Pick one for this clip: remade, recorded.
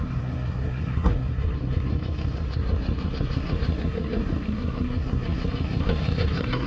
remade